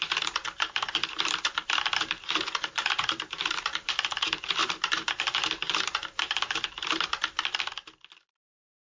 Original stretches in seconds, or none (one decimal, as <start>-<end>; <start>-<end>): 7.1-8.8